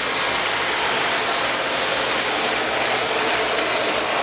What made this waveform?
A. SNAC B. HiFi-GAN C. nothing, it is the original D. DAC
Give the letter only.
C